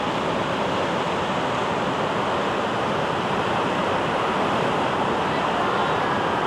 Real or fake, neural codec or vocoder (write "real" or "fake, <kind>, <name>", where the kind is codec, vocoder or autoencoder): real